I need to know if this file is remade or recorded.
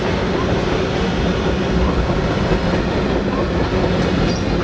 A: recorded